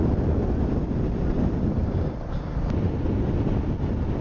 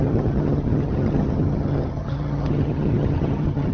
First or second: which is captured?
first